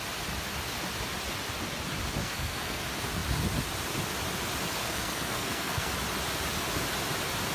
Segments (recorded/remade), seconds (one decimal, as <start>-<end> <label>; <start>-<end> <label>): 0.0-2.2 recorded; 2.2-2.8 remade; 2.8-4.8 recorded; 4.8-5.9 remade; 5.9-7.5 recorded